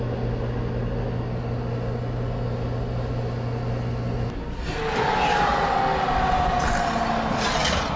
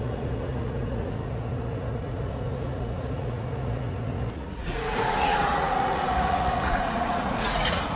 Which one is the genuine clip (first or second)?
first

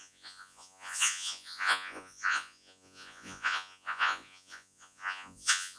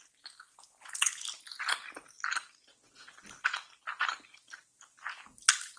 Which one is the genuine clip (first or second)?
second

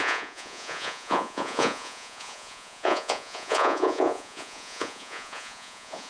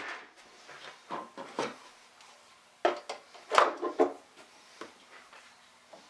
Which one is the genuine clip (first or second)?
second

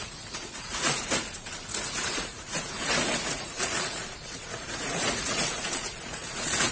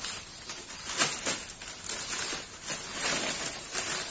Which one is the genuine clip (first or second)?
second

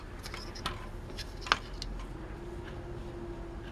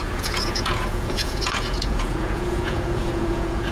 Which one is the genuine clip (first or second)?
first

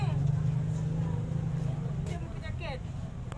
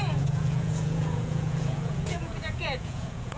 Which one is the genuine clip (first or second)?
first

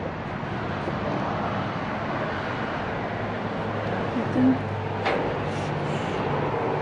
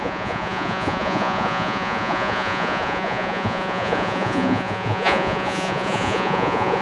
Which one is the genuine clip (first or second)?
first